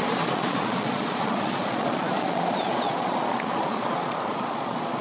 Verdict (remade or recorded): remade